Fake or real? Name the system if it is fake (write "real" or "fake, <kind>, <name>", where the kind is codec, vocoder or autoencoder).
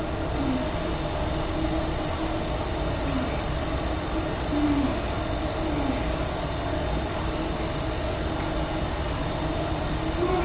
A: real